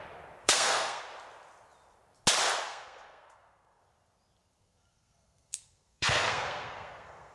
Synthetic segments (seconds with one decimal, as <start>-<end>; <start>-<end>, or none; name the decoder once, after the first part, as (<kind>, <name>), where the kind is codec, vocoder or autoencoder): 0.4-1.0 (codec, SNAC); 2.7-3.8; 4.6-7.3